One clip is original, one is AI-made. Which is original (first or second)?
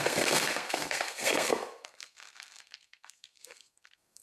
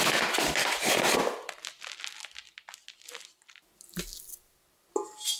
second